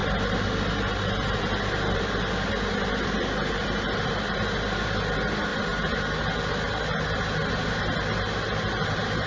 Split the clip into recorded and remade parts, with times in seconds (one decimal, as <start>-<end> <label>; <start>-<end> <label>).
0.0-9.3 recorded